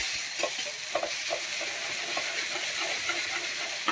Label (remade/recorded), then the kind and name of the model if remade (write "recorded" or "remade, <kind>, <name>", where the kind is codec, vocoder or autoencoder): recorded